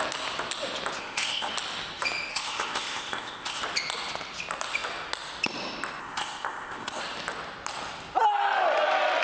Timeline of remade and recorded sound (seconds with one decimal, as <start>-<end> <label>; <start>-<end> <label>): 0.0-1.0 recorded; 1.0-1.5 remade; 1.5-2.3 recorded; 2.3-3.6 remade; 3.6-6.0 recorded; 6.0-7.0 remade; 7.0-9.2 recorded